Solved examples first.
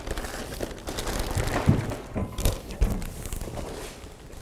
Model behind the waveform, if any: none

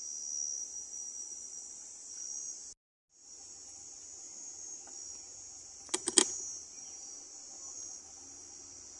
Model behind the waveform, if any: none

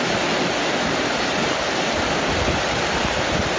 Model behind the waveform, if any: none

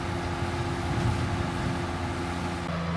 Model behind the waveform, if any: none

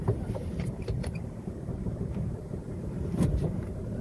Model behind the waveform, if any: vocoder, BigVGAN v2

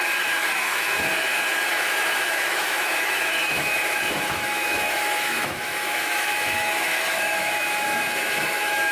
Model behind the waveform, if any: autoencoder, DAC-VAE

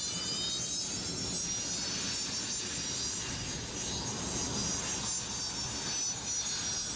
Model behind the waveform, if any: none